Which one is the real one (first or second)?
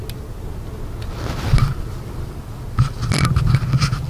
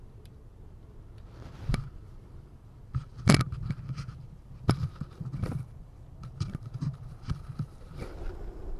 first